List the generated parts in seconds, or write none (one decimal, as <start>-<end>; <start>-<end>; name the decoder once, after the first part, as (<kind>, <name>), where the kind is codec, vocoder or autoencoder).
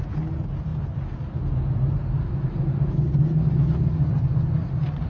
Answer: none